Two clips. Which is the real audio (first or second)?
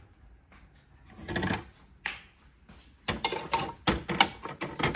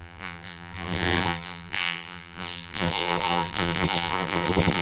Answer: first